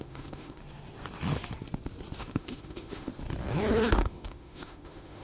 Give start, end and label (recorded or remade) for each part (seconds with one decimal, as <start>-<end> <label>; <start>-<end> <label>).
0.0-0.6 remade; 0.6-2.2 recorded; 2.2-3.1 remade; 3.1-3.9 recorded; 3.9-5.2 remade

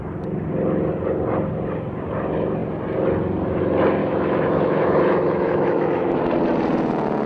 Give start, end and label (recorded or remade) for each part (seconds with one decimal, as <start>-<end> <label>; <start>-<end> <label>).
0.0-4.0 recorded; 4.0-6.2 remade; 6.2-7.3 recorded

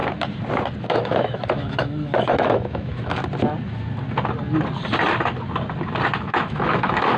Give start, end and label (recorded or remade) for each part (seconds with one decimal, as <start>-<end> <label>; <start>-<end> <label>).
0.0-0.8 recorded; 0.8-3.2 remade; 3.2-6.2 recorded; 6.2-7.2 remade

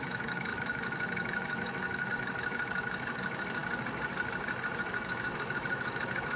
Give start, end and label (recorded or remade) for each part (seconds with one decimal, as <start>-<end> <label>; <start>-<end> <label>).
0.0-3.6 remade; 3.6-4.8 recorded; 4.8-6.4 remade

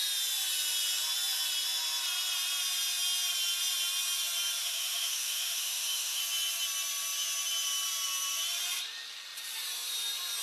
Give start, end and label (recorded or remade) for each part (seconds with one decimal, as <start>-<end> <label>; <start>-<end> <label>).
0.0-4.6 recorded; 4.6-6.2 remade; 6.2-10.4 recorded

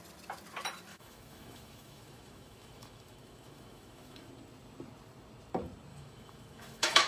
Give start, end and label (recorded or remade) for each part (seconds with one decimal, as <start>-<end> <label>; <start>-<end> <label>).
0.0-0.9 recorded; 0.9-4.3 remade; 4.3-5.9 recorded; 5.9-7.1 remade

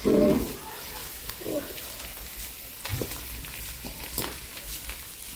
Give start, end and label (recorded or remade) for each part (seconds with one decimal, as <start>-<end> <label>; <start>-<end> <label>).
0.0-1.0 recorded; 1.0-1.6 remade; 1.6-4.5 recorded; 4.5-5.0 remade; 5.0-5.4 recorded

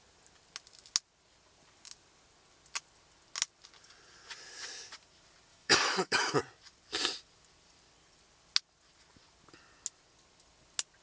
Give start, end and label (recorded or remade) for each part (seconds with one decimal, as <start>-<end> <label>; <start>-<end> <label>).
0.0-5.5 recorded; 5.5-6.4 remade; 6.4-11.0 recorded